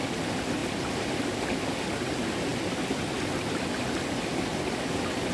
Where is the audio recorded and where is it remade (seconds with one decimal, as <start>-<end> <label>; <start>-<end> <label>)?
0.0-5.3 recorded